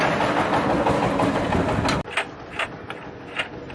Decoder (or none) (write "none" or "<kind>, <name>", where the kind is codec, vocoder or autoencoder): none